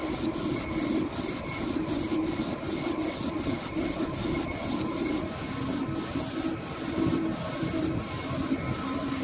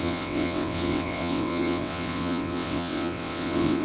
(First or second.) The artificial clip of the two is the second